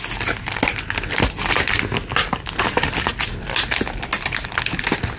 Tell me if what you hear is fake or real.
real